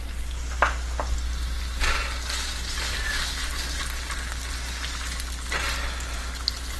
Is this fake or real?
real